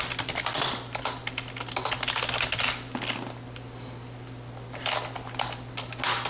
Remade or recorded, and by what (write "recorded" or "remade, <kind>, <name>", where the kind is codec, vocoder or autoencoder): recorded